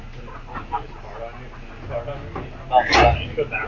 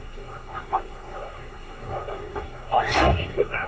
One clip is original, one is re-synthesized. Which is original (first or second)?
first